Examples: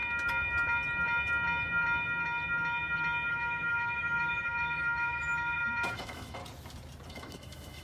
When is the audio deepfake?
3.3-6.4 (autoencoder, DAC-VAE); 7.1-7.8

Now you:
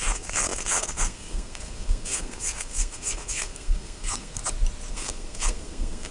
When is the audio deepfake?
0.0-4.4 (codec, SNAC); 4.9-6.1

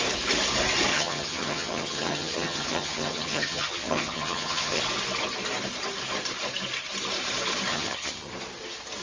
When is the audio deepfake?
0.9-4.8 (vocoder, HiFi-GAN); 7.7-8.3

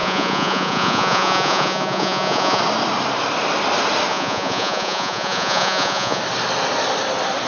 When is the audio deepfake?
0.0-2.6 (vocoder, Vocos); 4.1-6.2

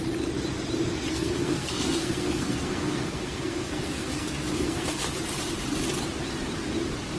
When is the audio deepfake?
1.1-5.1 (codec, SNAC)

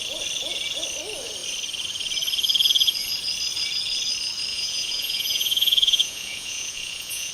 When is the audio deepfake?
4.5-7.3 (vocoder, Vocos)

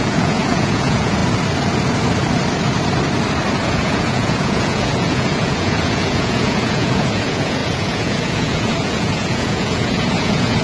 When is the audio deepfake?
0.0-1.2 (vocoder, Vocos); 3.7-10.6